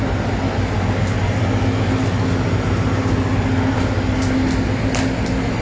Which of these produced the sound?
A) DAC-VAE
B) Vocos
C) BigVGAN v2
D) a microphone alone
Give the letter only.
D